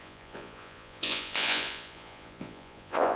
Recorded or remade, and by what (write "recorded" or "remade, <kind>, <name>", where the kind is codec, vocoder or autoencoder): remade, vocoder, Vocos